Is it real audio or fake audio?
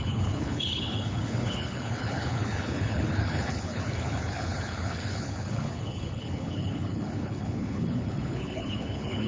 fake